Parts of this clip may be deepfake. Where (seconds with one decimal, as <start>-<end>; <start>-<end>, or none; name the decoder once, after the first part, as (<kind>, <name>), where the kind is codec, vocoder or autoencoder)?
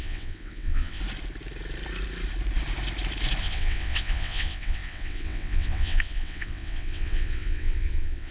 0.0-1.0 (vocoder, WaveNeXt); 3.4-8.3